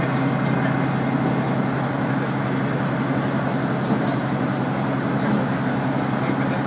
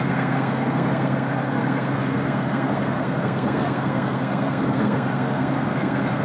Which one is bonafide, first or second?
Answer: first